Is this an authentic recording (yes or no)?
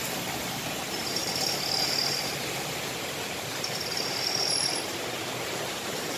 no